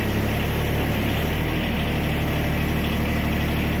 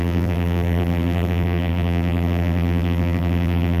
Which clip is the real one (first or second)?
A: first